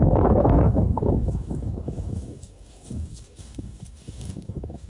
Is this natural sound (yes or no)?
no